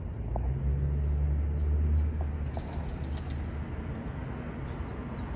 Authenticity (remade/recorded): recorded